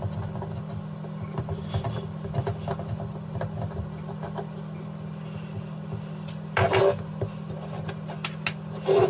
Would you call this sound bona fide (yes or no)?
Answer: yes